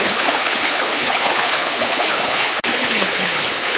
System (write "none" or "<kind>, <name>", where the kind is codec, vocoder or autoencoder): codec, HILCodec